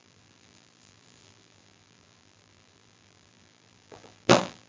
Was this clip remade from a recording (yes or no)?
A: yes